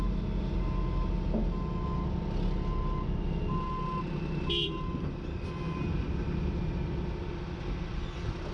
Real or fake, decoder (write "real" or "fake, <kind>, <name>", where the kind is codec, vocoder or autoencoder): real